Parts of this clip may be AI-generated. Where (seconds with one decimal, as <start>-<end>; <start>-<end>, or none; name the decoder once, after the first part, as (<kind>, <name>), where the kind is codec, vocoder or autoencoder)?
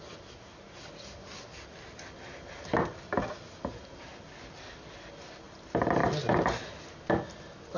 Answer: none